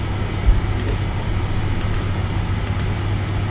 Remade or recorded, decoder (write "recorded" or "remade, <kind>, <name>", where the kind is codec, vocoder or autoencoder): recorded